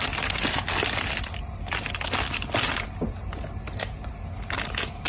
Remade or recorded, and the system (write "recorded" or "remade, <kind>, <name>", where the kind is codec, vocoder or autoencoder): recorded